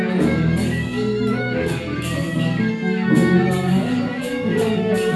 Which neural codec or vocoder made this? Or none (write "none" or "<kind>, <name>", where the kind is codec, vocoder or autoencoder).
codec, DAC